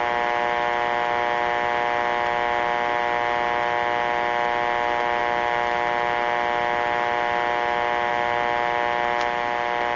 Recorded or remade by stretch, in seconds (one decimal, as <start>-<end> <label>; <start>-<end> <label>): 0.0-10.0 recorded